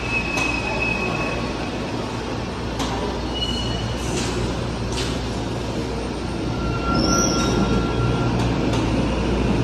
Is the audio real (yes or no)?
yes